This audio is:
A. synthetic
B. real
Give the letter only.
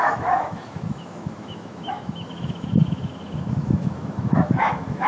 A